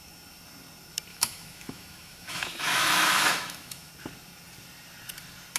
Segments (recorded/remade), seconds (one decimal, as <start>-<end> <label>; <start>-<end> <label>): 0.0-1.1 recorded; 1.1-3.9 remade; 3.9-5.6 recorded

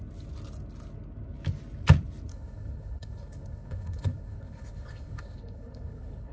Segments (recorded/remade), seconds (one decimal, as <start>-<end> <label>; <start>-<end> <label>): 0.0-2.3 recorded; 2.3-6.3 remade

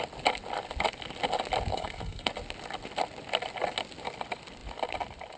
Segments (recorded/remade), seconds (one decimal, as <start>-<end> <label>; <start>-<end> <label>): 0.0-1.7 recorded; 1.7-2.3 remade; 2.3-5.4 recorded

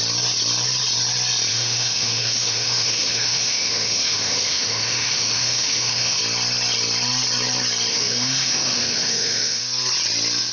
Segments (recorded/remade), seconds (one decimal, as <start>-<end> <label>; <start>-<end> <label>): 0.0-1.5 recorded; 1.5-6.2 remade; 6.2-7.9 recorded; 7.9-9.6 remade; 9.6-10.5 recorded

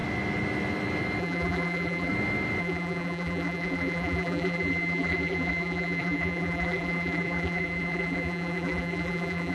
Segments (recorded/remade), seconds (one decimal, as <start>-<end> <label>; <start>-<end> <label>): 0.0-1.2 recorded; 1.2-2.1 remade; 2.1-2.6 recorded; 2.6-9.5 remade